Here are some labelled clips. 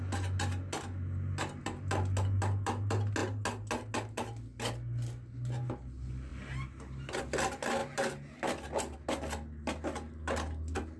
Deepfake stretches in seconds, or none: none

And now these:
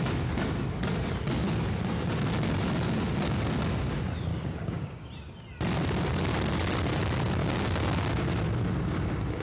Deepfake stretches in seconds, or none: 4.3-5.1 (codec, DAC); 7.4-8.3

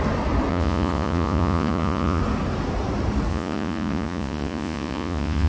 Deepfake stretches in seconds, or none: 0.5-2.2 (vocoder, Vocos); 3.3-5.5

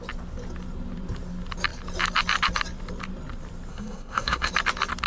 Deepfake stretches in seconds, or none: 3.7-4.5 (codec, SNAC)